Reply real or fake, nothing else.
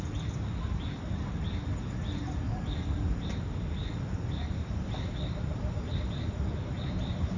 real